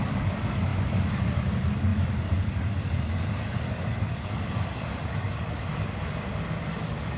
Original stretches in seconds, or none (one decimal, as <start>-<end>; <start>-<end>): none